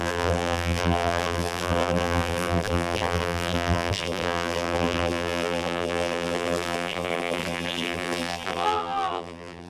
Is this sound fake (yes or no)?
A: yes